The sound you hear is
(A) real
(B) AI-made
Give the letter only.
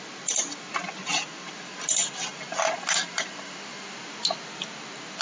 A